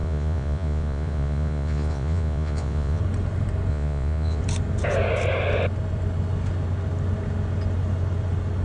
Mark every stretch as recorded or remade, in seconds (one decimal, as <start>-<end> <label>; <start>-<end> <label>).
0.0-3.0 remade; 3.0-3.7 recorded; 3.7-4.4 remade; 4.4-8.6 recorded